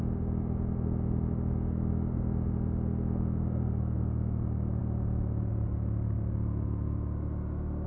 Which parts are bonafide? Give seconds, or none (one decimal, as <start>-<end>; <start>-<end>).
0.0-7.9